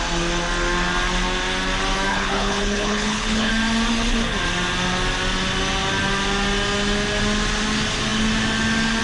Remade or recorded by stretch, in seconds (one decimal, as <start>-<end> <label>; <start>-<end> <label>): 0.0-2.1 recorded; 2.1-3.5 remade; 3.5-9.0 recorded